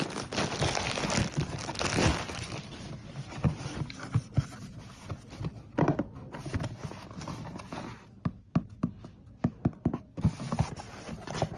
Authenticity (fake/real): real